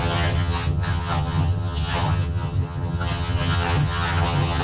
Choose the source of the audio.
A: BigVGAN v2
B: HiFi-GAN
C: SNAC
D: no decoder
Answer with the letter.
B